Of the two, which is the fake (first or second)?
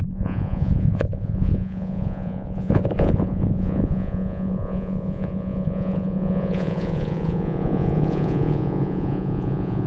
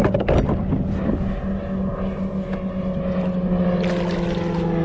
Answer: first